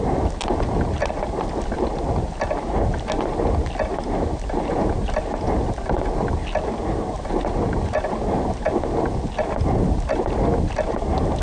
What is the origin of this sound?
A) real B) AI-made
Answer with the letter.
A